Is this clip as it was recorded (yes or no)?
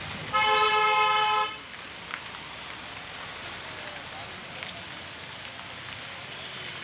yes